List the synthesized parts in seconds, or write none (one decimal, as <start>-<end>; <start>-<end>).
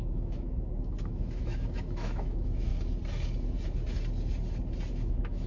0.0-2.7; 4.9-5.5